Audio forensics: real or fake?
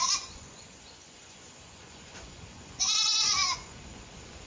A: fake